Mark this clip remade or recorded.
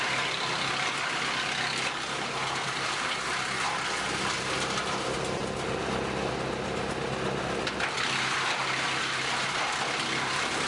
recorded